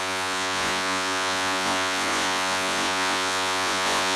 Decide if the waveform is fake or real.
fake